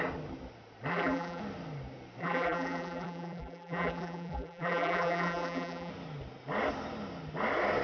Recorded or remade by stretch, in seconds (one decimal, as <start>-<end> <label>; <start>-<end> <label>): 0.0-0.9 recorded; 0.9-1.4 remade; 1.4-2.2 recorded; 2.2-5.9 remade; 5.9-7.8 recorded